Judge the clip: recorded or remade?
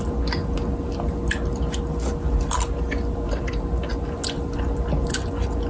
recorded